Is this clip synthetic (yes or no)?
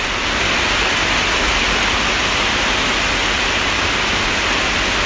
no